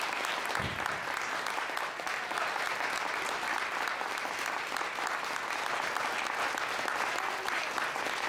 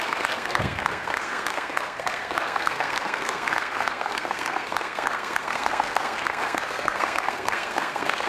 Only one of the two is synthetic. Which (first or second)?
second